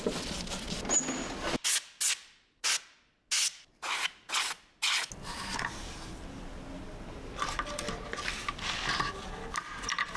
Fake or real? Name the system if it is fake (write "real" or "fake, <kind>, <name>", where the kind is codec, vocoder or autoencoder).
real